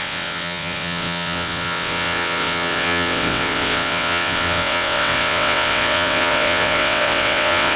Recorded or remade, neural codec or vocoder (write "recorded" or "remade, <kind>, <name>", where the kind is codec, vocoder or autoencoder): remade, vocoder, WaveNeXt